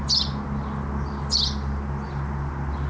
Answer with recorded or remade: recorded